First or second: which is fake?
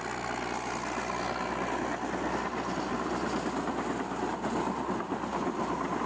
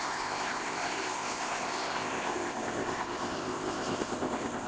second